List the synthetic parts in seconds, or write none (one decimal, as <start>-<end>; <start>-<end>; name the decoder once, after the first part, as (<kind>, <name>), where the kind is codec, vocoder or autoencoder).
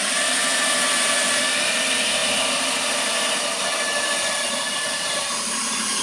none